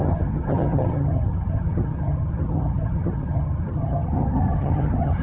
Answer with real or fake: fake